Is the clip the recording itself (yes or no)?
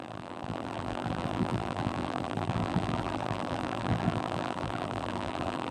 no